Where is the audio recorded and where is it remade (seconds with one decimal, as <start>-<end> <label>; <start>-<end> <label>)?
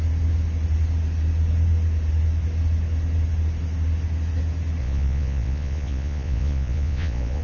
0.0-4.8 recorded; 4.8-7.4 remade